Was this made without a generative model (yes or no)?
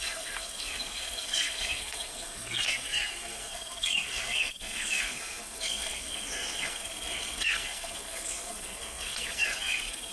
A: no